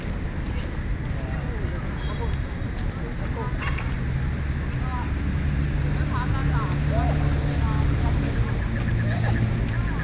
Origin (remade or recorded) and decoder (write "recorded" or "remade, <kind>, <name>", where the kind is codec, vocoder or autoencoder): recorded